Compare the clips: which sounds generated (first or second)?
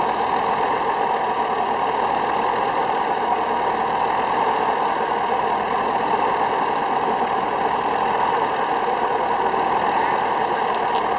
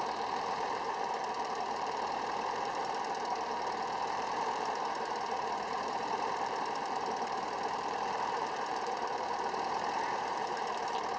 second